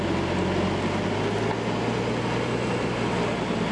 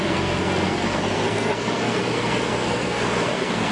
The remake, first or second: second